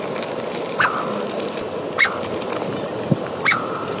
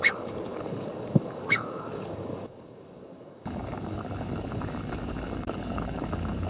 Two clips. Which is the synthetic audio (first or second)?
second